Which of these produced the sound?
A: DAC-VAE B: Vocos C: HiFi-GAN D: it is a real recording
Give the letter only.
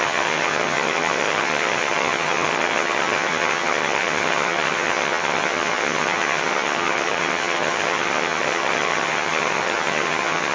C